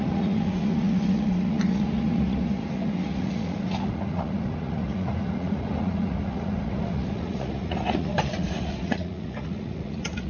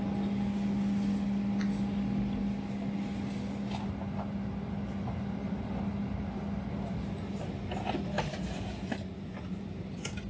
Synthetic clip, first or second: first